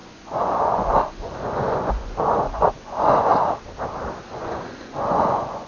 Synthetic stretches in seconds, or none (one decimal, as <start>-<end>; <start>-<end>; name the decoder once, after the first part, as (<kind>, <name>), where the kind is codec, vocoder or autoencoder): 0.0-3.3 (vocoder, Vocos); 4.3-5.7